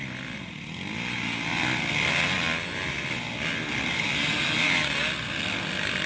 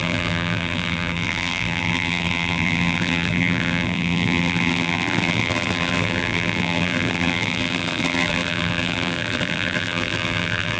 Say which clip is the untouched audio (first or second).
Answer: first